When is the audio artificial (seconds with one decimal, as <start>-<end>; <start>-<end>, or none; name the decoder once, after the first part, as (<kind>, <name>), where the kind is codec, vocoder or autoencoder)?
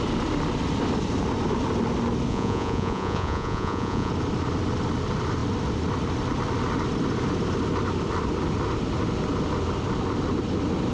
2.3-4.1 (vocoder, Vocos)